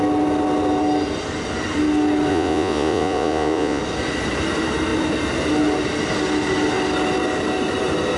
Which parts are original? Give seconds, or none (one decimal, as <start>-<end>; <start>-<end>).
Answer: 0.0-2.3; 3.8-8.2